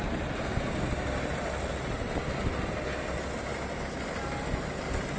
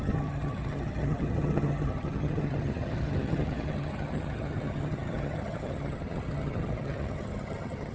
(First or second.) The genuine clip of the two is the first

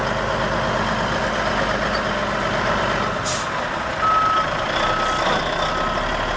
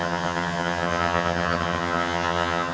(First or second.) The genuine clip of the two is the first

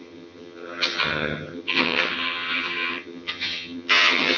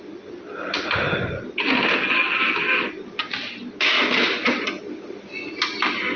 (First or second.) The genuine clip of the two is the second